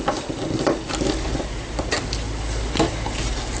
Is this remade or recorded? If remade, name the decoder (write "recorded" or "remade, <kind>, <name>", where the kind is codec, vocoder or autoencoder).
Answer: recorded